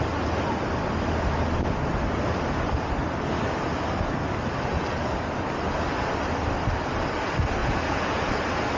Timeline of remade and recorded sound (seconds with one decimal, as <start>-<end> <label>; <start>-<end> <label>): 0.0-7.6 recorded; 7.6-8.3 remade; 8.3-8.8 recorded